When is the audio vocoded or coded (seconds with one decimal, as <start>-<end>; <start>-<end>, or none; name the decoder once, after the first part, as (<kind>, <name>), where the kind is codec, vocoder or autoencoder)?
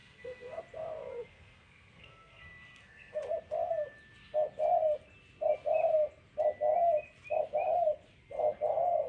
0.0-0.6 (codec, SNAC); 1.2-3.2